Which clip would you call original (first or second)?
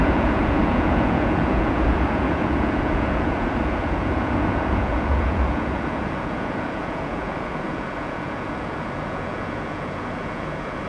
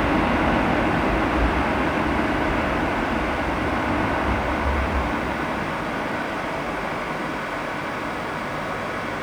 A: second